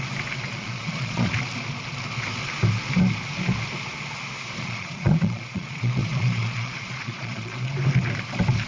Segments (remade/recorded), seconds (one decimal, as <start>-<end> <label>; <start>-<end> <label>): 0.0-0.5 recorded; 0.5-1.3 remade; 1.3-4.6 recorded; 4.6-7.7 remade; 7.7-8.7 recorded